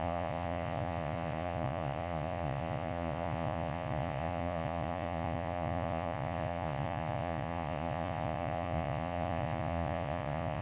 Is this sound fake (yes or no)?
yes